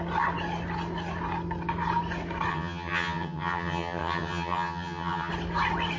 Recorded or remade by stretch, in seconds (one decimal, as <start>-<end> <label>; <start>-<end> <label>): 0.0-2.5 recorded; 2.5-5.3 remade; 5.3-6.0 recorded